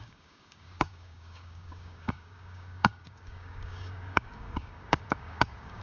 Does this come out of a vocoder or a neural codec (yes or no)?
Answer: yes